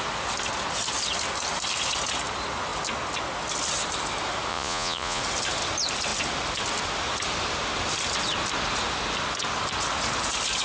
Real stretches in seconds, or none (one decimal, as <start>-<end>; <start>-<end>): 0.0-4.5; 5.2-10.6